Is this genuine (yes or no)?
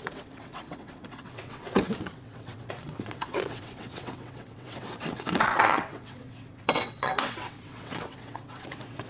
no